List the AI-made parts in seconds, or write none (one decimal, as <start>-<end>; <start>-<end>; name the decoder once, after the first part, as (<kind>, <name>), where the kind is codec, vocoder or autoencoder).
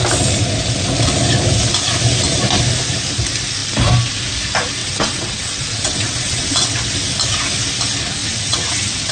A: 4.8-6.8 (vocoder, WaveNeXt); 8.2-9.1